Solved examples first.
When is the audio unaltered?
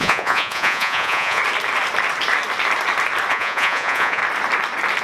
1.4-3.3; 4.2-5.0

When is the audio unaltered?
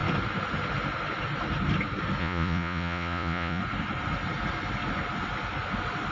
0.0-2.2; 3.6-6.1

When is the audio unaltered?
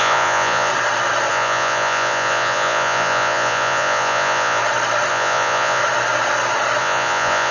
0.7-1.3; 4.6-5.1; 5.8-6.8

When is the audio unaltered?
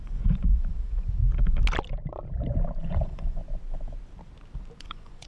1.2-2.8; 3.4-4.8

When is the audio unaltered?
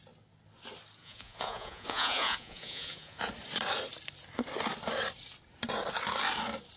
0.0-1.0; 3.3-6.8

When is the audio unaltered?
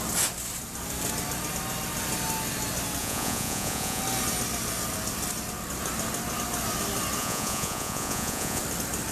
0.0-3.0; 4.0-7.2; 8.6-9.1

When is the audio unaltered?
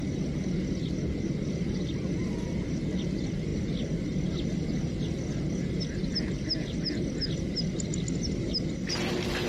0.0-9.5